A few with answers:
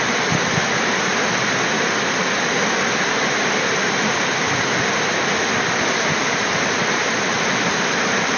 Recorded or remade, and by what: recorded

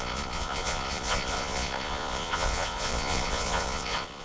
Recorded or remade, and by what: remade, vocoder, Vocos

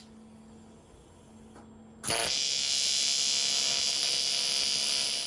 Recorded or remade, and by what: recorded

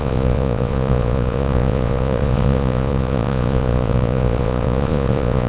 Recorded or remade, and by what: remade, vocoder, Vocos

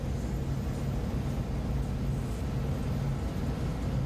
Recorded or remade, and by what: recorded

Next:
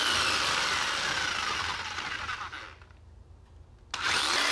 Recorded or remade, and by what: recorded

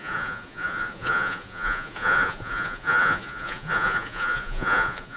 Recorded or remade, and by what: remade, vocoder, Vocos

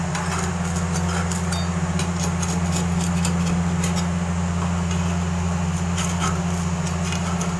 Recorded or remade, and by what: recorded